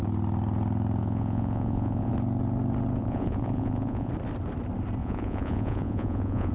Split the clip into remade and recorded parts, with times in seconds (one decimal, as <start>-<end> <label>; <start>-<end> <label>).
0.0-1.0 recorded; 1.0-2.1 remade; 2.1-3.0 recorded; 3.0-4.1 remade; 4.1-5.0 recorded; 5.0-6.5 remade

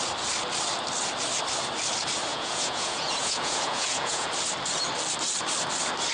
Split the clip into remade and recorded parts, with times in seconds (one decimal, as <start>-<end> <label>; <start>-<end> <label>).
0.0-2.3 recorded; 2.3-4.3 remade; 4.3-6.1 recorded

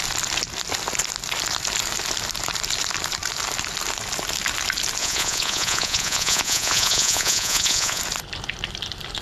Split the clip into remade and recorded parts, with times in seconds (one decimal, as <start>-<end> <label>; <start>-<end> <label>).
0.0-5.0 recorded; 5.0-8.0 remade; 8.0-9.2 recorded

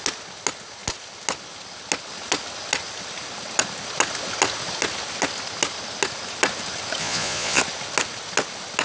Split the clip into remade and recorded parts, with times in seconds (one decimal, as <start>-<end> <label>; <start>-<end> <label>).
0.0-7.0 recorded; 7.0-7.6 remade; 7.6-8.8 recorded

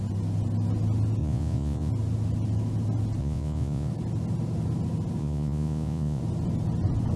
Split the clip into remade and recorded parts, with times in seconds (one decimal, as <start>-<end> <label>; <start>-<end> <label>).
0.0-1.2 recorded; 1.2-1.9 remade; 1.9-3.2 recorded; 3.2-3.9 remade; 3.9-5.2 recorded; 5.2-6.2 remade; 6.2-7.2 recorded

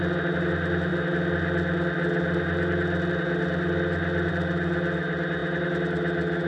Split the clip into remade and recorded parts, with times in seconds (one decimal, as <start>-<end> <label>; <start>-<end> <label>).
0.0-6.5 recorded

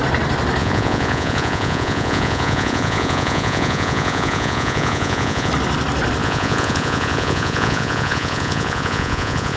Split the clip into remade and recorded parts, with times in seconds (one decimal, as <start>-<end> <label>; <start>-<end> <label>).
0.0-0.6 recorded; 0.6-5.5 remade; 5.5-6.2 recorded; 6.2-9.6 remade

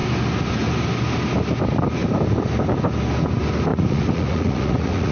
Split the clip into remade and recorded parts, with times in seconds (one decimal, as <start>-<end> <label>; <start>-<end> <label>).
0.0-3.7 recorded; 3.7-5.1 remade